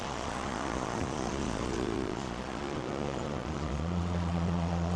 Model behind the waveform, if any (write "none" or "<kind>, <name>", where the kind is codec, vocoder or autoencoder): vocoder, Vocos